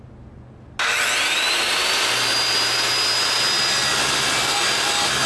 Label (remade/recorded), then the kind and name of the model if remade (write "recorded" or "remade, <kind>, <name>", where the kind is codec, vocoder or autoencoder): recorded